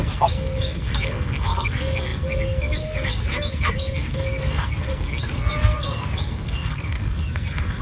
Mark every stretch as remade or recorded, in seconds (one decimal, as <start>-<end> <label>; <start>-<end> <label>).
0.0-7.8 remade